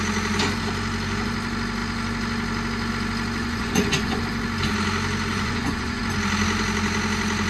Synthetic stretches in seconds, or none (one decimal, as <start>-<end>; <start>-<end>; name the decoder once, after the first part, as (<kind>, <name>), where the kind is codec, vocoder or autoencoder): 3.4-4.2 (vocoder, Vocos); 5.3-6.0